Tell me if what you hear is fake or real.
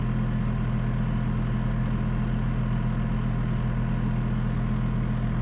real